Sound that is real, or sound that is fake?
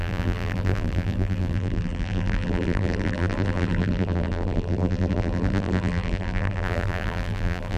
fake